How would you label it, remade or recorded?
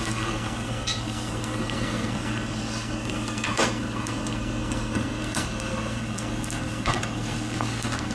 remade